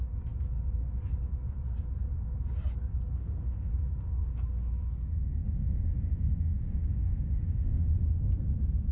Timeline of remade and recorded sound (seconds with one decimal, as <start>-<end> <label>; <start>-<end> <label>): 0.0-3.2 recorded; 3.2-3.7 remade; 3.7-5.4 recorded; 5.4-8.2 remade; 8.2-8.9 recorded